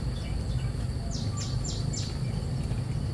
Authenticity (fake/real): real